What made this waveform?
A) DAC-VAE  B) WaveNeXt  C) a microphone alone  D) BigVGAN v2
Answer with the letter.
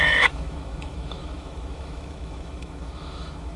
A